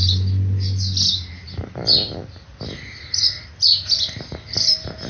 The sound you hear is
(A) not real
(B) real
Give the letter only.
B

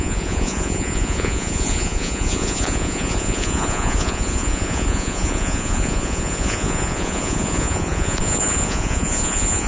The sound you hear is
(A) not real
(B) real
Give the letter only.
A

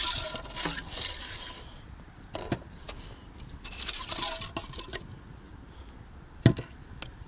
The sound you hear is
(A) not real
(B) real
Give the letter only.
B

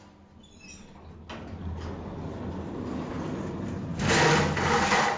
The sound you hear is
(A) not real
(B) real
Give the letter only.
B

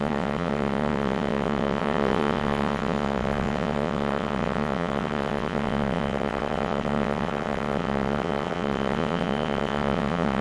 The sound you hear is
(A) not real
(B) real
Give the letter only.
A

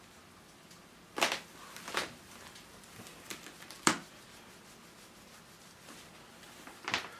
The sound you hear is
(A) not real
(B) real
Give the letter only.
B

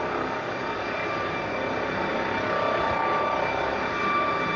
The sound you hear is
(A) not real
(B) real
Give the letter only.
B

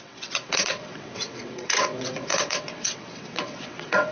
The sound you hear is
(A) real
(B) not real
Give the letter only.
B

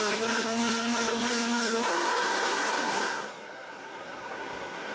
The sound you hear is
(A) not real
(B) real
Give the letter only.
A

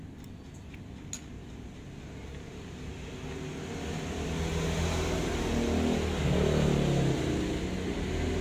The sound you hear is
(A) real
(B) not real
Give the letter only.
A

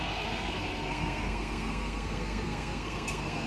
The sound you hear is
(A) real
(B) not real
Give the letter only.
B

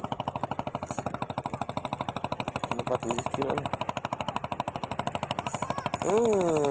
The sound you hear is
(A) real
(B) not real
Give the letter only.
A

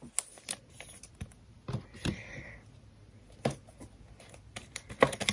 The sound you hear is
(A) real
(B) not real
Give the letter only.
A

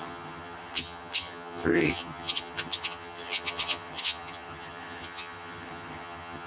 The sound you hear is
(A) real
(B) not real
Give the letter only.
B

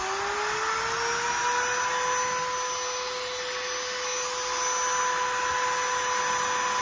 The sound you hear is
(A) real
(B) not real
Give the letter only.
A